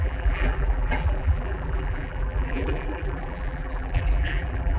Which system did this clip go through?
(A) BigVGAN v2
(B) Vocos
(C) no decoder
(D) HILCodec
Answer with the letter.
A